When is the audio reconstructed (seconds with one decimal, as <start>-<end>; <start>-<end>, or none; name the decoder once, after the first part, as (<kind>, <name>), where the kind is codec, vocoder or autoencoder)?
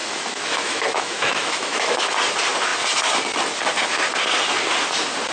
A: 0.0-2.1 (autoencoder, DAC-VAE)